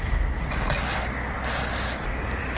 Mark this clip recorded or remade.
recorded